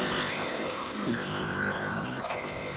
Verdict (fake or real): fake